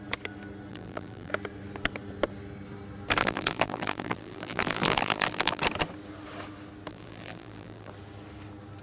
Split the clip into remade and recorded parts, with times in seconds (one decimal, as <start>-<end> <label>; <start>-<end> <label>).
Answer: 0.0-0.7 recorded; 0.7-1.3 remade; 1.3-3.2 recorded; 3.2-5.6 remade; 5.6-6.9 recorded; 6.9-7.9 remade; 7.9-8.8 recorded